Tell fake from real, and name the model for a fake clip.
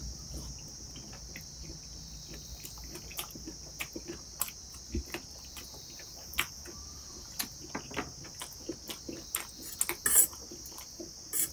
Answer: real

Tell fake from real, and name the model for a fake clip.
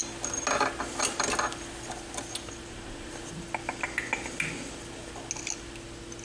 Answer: real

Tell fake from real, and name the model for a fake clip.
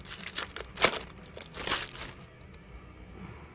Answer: real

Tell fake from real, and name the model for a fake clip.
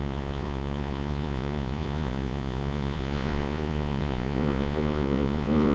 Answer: fake, vocoder, Vocos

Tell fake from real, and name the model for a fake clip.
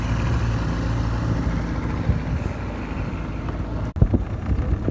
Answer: real